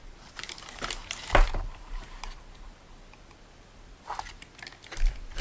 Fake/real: real